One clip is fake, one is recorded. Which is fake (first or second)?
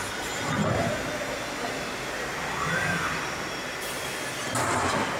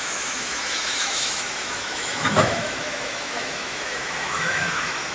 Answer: second